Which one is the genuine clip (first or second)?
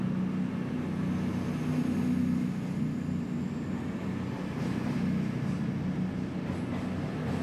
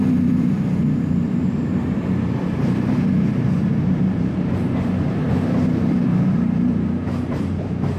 first